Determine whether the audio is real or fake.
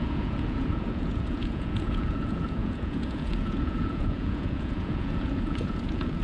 fake